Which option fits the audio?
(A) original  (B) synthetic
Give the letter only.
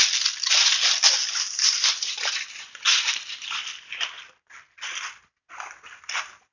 A